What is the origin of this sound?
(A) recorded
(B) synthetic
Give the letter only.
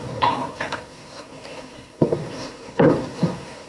B